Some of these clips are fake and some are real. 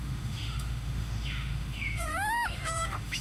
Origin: fake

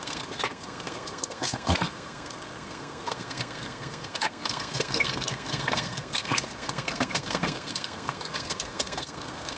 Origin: fake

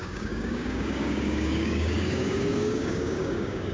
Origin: fake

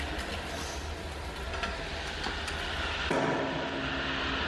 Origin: real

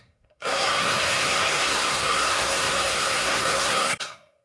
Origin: fake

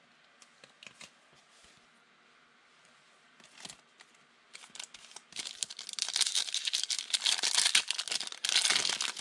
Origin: real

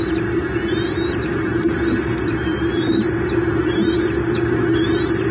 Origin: real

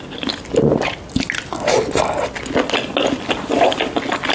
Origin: real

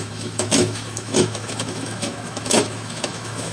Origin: fake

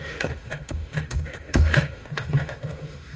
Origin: fake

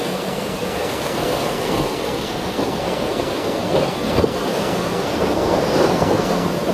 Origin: fake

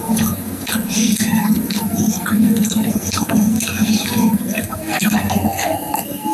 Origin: fake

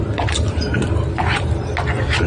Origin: real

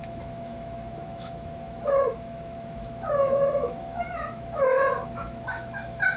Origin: fake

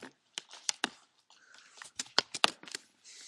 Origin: real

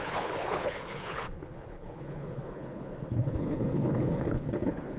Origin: fake